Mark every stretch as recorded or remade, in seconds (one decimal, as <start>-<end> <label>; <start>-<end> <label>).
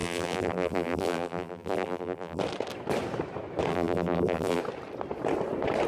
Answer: 0.0-2.4 remade; 2.4-3.7 recorded; 3.7-4.6 remade; 4.6-5.9 recorded